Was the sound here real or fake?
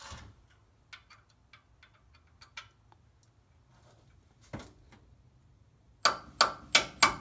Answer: real